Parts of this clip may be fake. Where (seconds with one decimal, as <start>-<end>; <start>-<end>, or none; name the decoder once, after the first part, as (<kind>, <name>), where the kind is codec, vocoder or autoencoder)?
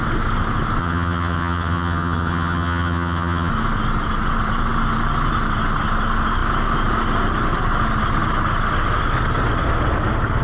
0.8-3.5 (vocoder, HiFi-GAN)